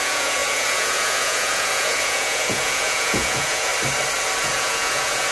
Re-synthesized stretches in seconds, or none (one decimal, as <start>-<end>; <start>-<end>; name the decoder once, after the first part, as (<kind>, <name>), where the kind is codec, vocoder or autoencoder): 0.0-3.7 (vocoder, Vocos); 4.4-5.3